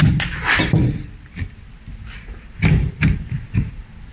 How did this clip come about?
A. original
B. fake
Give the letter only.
A